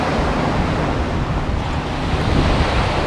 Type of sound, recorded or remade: recorded